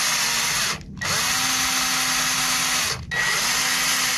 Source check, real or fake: real